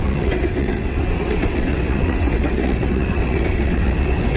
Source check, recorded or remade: remade